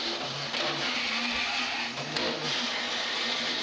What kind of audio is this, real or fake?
real